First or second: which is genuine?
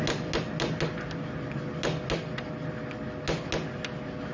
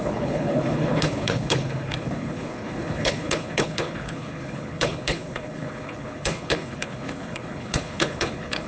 first